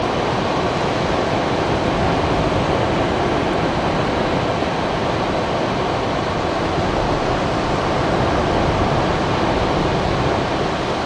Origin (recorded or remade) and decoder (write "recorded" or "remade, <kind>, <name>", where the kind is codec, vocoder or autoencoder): recorded